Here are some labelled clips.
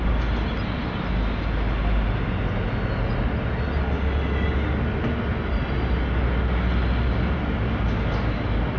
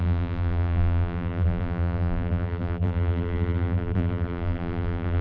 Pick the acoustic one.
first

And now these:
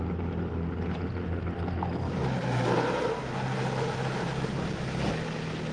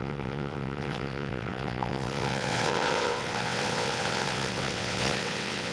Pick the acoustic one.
first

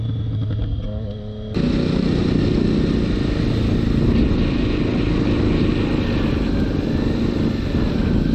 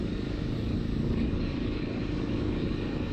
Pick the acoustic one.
first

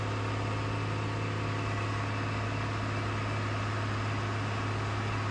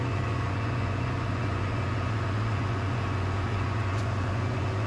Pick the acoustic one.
first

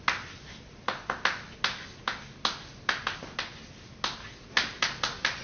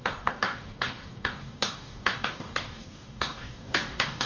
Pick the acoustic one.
first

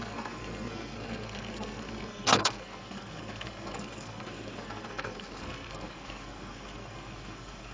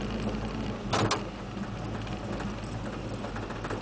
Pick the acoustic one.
second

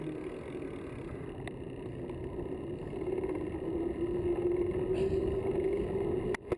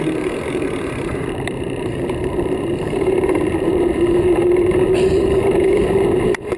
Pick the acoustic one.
first